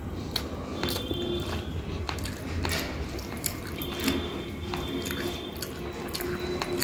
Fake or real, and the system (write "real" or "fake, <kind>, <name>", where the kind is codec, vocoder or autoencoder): real